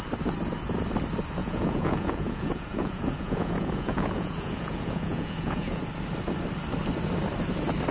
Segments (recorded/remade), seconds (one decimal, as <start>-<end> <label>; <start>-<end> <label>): 0.0-1.4 recorded; 1.4-5.8 remade; 5.8-7.9 recorded